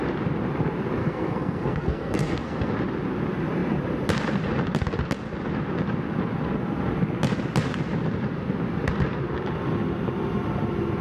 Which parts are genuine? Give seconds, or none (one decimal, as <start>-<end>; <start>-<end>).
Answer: 0.0-1.0; 2.7-11.0